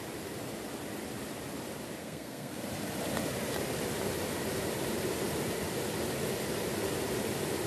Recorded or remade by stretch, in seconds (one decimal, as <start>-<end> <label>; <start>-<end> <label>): 0.0-2.0 recorded; 2.0-2.6 remade; 2.6-7.7 recorded